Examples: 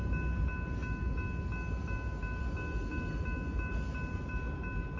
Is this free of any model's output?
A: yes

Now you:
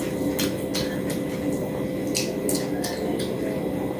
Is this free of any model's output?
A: yes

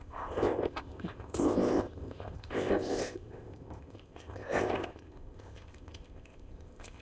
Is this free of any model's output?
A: no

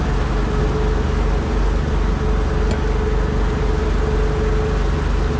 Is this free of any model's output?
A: yes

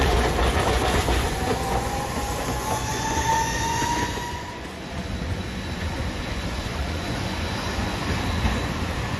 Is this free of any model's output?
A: no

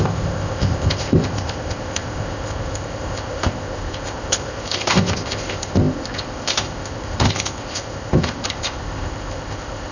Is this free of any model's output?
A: no